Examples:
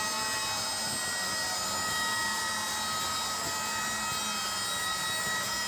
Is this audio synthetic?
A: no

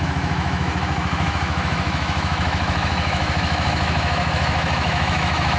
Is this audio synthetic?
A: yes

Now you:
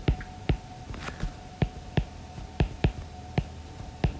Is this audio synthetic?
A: no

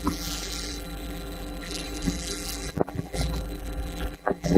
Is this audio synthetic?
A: yes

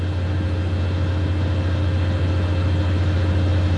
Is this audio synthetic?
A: no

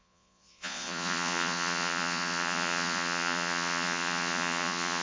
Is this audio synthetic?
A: yes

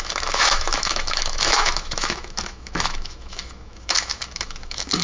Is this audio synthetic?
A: yes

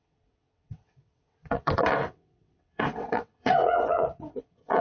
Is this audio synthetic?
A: yes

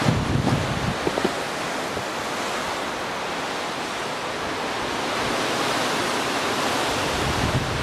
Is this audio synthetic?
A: no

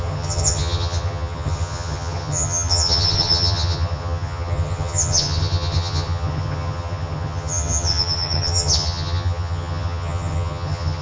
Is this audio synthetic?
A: yes